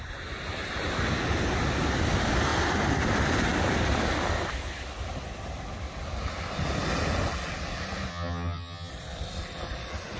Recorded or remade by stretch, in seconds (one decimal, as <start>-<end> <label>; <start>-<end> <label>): 0.0-8.1 recorded; 8.1-8.9 remade; 8.9-10.2 recorded